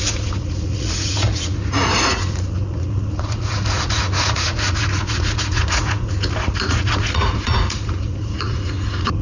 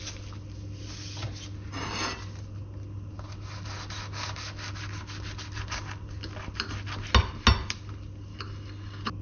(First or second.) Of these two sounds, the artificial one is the first